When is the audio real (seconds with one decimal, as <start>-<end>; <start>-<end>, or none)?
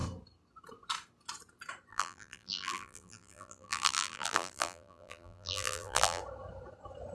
0.0-1.9; 6.2-7.1